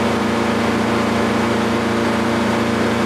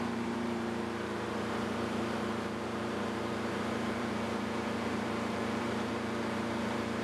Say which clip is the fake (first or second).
second